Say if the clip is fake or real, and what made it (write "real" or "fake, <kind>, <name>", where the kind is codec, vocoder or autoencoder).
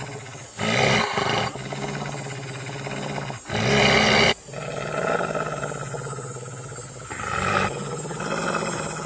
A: real